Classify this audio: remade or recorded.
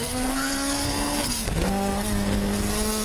remade